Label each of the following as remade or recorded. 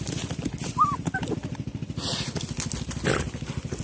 recorded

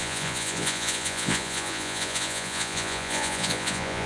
remade